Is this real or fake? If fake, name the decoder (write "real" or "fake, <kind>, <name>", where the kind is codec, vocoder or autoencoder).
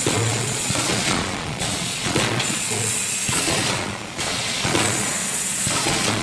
fake, vocoder, Vocos